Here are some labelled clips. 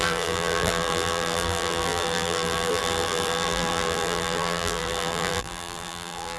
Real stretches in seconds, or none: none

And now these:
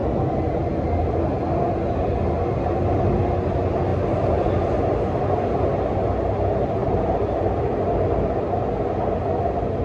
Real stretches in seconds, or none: 0.0-6.8; 7.4-9.8